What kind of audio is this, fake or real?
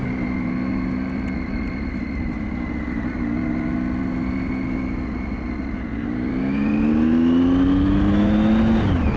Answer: real